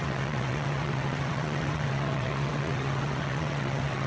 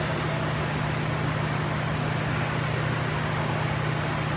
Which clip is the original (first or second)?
second